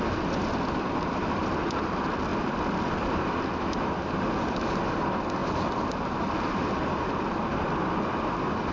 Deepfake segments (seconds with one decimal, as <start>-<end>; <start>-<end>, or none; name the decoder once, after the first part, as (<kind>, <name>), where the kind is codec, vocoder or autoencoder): 0.4-1.6 (vocoder, BigVGAN v2); 2.3-3.0